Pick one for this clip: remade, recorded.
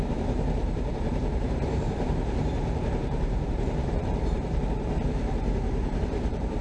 remade